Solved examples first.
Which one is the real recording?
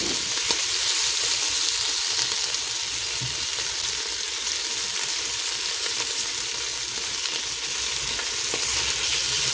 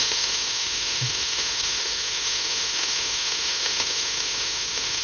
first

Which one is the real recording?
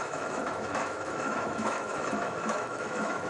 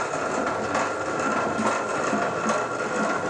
second